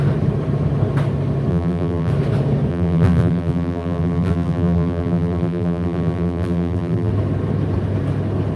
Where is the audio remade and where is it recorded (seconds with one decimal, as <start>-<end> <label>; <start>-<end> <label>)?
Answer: 0.0-1.5 recorded; 1.5-2.1 remade; 2.1-2.7 recorded; 2.7-7.1 remade; 7.1-8.6 recorded